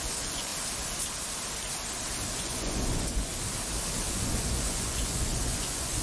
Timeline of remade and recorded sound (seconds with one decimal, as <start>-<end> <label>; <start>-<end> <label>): 0.0-0.5 remade; 0.5-2.4 recorded; 2.4-3.3 remade; 3.3-4.1 recorded; 4.1-6.0 remade